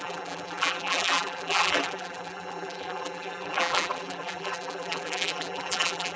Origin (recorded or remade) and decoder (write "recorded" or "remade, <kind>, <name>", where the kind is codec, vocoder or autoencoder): remade, vocoder, BigVGAN v2